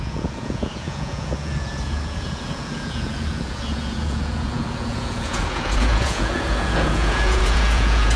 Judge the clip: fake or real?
fake